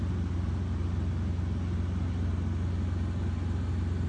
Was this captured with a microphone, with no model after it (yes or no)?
yes